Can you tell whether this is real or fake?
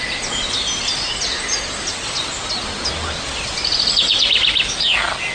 real